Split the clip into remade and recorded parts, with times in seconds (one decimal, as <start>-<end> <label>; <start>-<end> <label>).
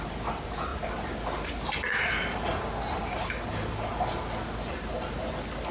0.0-5.7 recorded